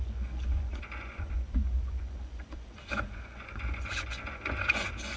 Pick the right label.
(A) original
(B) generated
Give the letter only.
B